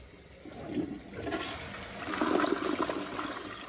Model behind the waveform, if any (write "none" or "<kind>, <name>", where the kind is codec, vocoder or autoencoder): none